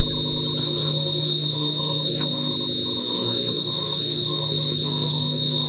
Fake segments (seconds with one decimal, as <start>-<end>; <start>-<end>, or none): 0.6-2.5; 3.0-5.7